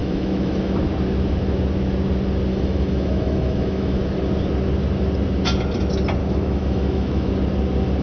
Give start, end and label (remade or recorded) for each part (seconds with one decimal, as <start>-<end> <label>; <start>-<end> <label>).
0.0-0.7 remade; 0.7-2.5 recorded; 2.5-4.1 remade; 4.1-6.2 recorded; 6.2-7.3 remade; 7.3-8.0 recorded